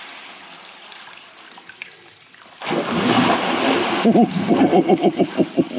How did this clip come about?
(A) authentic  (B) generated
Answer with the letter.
A